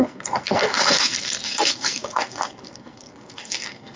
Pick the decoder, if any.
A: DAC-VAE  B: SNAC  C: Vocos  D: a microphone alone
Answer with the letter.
B